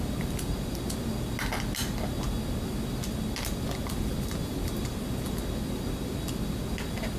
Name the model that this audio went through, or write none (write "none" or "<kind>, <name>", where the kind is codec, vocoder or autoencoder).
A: none